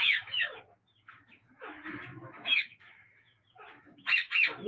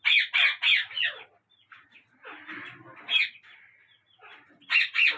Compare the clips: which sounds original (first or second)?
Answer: second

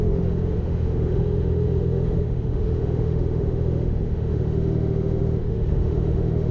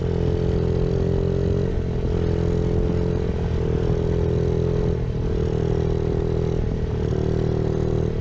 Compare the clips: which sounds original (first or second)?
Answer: second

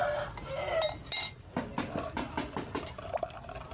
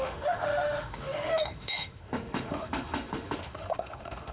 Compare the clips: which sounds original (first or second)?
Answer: first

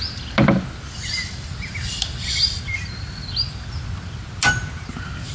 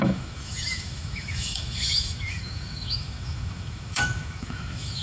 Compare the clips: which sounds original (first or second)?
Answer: first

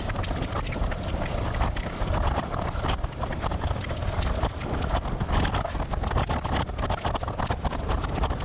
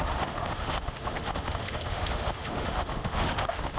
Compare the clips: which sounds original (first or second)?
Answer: first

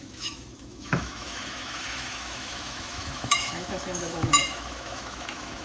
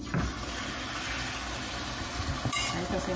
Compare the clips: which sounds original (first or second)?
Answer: second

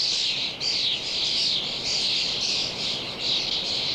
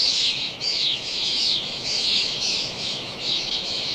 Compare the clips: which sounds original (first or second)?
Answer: first